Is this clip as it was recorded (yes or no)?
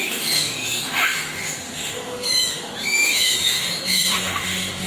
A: no